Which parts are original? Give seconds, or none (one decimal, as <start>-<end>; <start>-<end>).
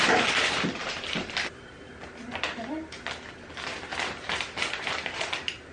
0.0-5.7